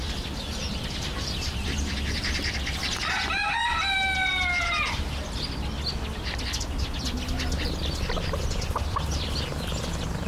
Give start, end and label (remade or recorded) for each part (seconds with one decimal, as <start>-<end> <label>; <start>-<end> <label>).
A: 0.0-0.6 recorded; 0.6-2.5 remade; 2.5-10.3 recorded